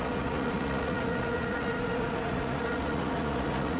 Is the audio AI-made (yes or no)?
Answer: yes